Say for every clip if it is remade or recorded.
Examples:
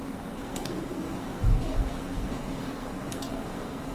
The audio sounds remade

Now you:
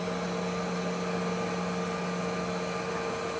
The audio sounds recorded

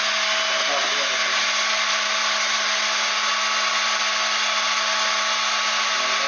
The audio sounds recorded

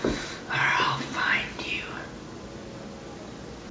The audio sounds recorded